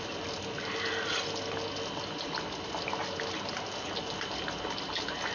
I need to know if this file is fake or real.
real